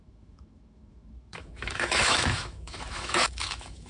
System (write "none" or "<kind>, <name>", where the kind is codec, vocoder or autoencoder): autoencoder, DAC-VAE